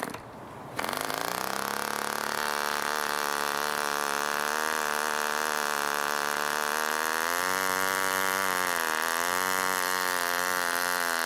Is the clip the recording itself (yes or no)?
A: yes